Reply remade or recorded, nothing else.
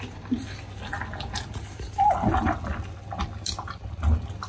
recorded